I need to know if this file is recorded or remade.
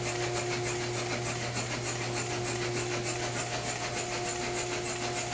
recorded